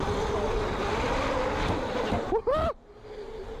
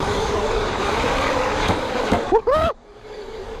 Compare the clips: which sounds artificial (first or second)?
second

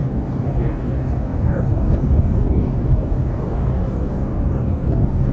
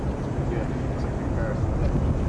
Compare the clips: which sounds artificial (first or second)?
first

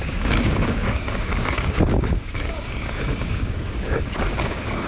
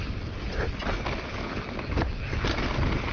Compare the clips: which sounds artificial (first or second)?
first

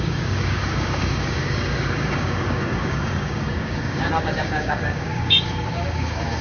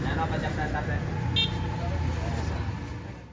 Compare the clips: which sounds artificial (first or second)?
first